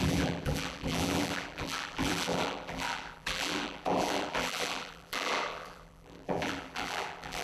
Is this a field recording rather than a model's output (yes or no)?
no